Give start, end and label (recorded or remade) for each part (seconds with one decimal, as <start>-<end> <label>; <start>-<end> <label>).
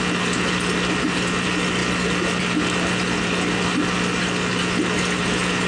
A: 0.0-5.7 recorded